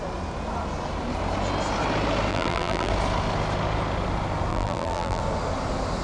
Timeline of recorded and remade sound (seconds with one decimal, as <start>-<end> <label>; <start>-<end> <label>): 0.0-2.3 recorded; 2.3-2.9 remade; 2.9-4.5 recorded; 4.5-5.2 remade; 5.2-6.0 recorded